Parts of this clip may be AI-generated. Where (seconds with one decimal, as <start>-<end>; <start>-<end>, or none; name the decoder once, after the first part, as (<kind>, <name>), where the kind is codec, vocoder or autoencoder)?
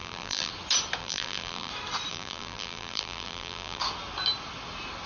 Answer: 0.0-0.5 (vocoder, BigVGAN v2); 1.0-1.7; 2.1-3.8